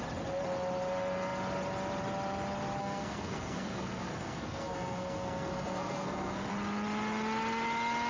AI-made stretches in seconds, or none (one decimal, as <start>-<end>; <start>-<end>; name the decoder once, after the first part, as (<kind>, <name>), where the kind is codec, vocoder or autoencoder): 2.8-6.5 (codec, SNAC)